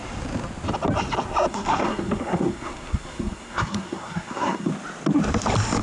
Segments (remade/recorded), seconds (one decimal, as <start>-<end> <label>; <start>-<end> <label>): 0.0-1.5 recorded; 1.5-4.7 remade; 4.7-5.8 recorded